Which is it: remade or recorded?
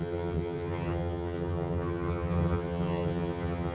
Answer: remade